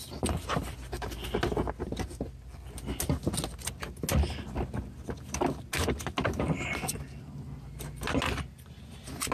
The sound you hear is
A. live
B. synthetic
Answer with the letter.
A